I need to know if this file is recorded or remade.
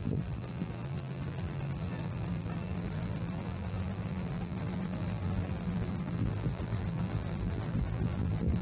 remade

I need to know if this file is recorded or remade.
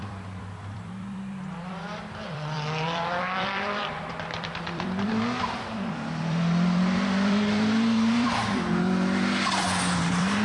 remade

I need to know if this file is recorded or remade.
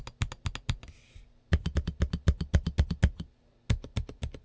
recorded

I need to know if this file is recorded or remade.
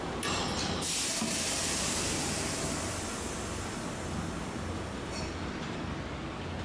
recorded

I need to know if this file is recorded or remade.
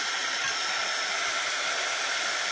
remade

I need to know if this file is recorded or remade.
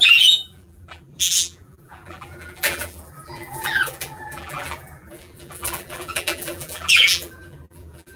remade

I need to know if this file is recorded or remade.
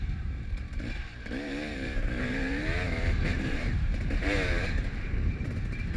remade